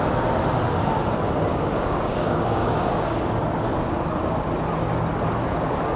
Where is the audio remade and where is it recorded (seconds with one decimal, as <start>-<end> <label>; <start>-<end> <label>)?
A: 0.0-1.5 recorded; 1.5-3.2 remade; 3.2-6.0 recorded